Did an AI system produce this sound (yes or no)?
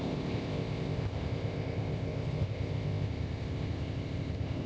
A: yes